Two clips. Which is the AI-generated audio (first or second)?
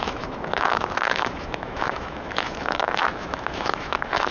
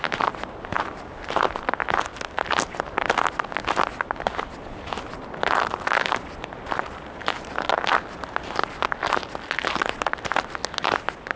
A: first